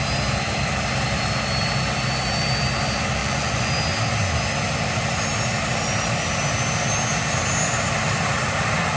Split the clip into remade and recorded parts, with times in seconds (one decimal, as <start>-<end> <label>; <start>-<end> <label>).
0.0-3.2 recorded; 3.2-3.7 remade; 3.7-9.0 recorded